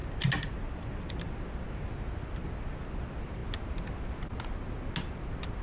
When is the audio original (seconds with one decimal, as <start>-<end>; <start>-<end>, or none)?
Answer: 0.0-5.6